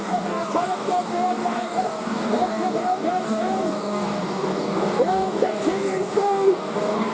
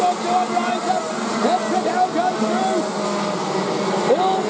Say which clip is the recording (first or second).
second